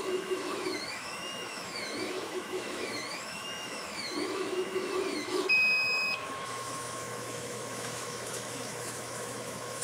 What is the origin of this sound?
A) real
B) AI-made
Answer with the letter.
B